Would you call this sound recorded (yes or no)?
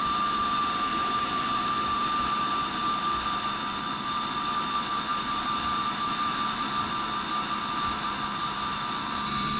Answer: no